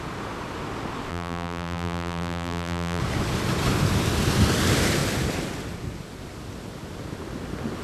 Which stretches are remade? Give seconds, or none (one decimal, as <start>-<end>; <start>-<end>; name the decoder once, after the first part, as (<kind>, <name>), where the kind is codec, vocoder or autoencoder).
1.1-3.0 (vocoder, BigVGAN v2)